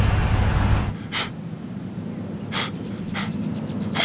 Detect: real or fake real